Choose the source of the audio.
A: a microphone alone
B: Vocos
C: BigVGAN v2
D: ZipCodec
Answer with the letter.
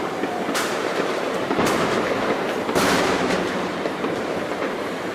C